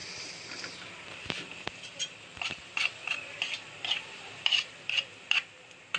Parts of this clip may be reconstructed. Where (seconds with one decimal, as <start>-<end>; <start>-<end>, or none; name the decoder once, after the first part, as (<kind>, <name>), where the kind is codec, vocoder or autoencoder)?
0.0-6.0 (vocoder, BigVGAN v2)